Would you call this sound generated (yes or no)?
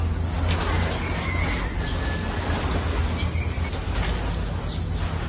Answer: no